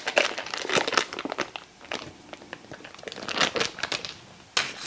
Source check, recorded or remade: recorded